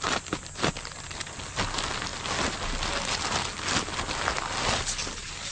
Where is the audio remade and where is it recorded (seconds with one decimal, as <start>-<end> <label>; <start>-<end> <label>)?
0.0-5.5 recorded